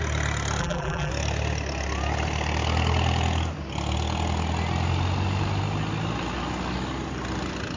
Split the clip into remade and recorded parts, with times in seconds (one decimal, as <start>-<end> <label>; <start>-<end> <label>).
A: 0.0-0.6 recorded; 0.6-1.1 remade; 1.1-7.8 recorded